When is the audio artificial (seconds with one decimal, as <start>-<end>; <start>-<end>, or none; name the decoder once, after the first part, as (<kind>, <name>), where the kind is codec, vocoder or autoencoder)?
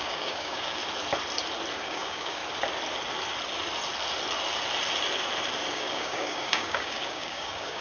0.0-0.8 (codec, DAC); 1.8-2.4; 5.7-7.8